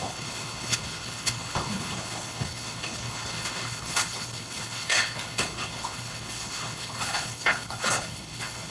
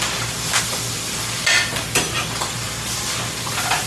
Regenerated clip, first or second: first